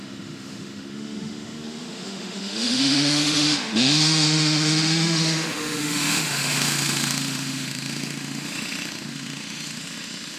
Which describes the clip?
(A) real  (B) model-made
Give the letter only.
B